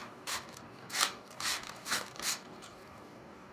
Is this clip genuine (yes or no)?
no